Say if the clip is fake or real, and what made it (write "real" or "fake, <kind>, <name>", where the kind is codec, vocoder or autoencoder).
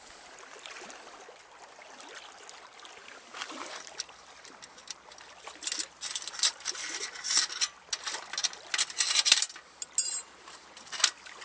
real